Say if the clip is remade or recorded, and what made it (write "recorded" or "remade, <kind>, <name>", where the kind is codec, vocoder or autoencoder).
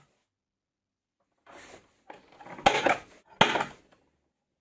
recorded